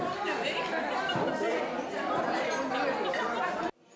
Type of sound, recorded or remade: recorded